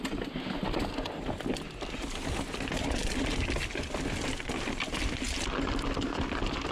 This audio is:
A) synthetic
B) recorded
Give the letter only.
B